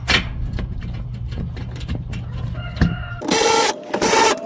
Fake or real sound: real